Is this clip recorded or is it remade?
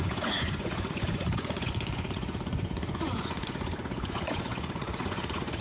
remade